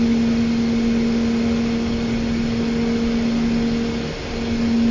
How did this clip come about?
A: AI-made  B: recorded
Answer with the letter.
B